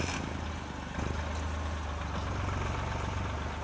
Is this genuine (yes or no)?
yes